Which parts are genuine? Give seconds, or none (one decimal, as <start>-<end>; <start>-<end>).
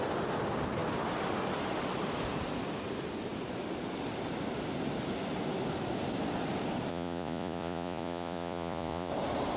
0.0-6.9; 9.1-9.6